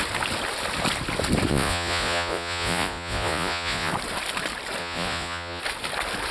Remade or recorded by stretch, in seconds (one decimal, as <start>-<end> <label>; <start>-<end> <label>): 0.0-1.5 recorded; 1.5-3.9 remade; 3.9-4.8 recorded; 4.8-5.6 remade; 5.6-6.3 recorded